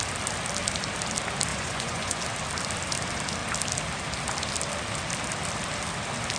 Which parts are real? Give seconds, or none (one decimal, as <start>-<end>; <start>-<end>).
0.0-1.5; 2.2-6.4